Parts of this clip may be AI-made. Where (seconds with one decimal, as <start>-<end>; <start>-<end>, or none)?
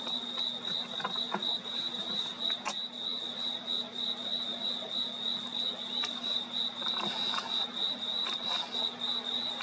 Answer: none